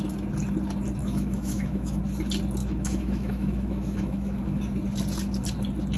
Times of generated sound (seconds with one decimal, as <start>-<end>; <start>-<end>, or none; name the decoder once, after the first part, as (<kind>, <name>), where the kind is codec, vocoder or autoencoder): 1.0-2.0 (autoencoder, DAC-VAE); 2.6-4.6